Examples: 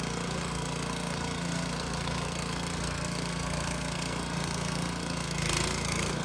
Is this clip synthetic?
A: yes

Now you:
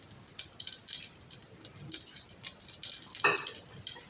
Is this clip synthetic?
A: no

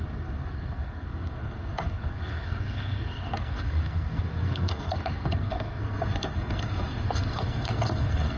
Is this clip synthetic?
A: yes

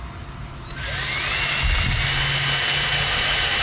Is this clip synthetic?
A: no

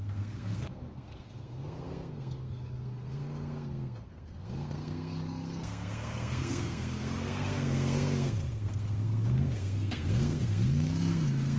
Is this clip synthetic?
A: yes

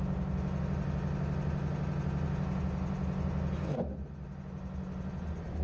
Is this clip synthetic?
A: no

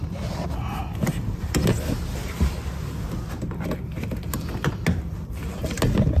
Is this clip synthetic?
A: no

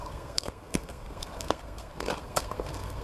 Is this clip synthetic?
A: yes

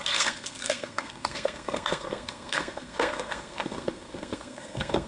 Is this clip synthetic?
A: yes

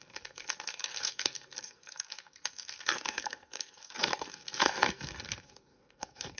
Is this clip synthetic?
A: yes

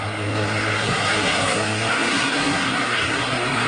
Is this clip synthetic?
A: yes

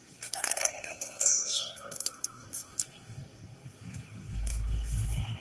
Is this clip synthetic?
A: yes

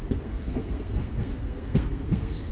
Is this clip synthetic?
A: yes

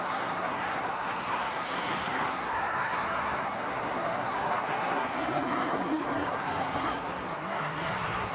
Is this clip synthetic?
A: yes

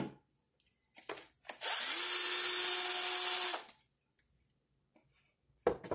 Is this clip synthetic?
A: no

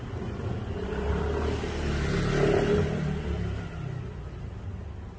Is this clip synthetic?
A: no